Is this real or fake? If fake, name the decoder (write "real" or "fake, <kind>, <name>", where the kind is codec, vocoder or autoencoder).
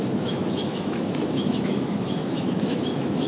fake, autoencoder, DAC-VAE